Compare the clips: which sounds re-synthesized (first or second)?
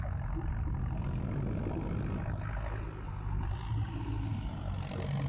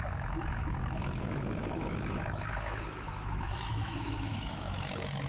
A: second